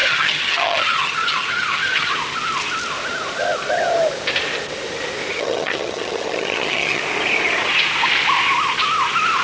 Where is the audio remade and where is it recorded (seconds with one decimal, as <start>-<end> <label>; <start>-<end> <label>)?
0.0-2.1 remade; 2.1-5.3 recorded; 5.3-7.0 remade; 7.0-9.4 recorded